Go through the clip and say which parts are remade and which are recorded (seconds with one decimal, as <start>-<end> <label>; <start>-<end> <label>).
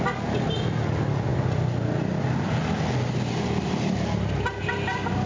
0.0-5.3 recorded